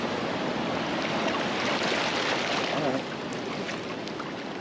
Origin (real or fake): real